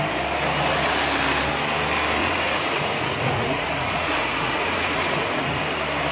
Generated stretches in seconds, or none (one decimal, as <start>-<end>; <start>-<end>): 2.2-5.6